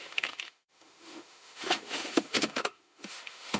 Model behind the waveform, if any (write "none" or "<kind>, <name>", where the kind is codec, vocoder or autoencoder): autoencoder, DAC-VAE